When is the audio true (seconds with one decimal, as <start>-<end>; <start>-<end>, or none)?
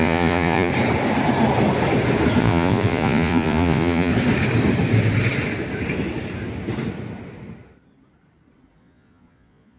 0.7-2.4; 4.1-8.8